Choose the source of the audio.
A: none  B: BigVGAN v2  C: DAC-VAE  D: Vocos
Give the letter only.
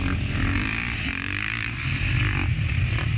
A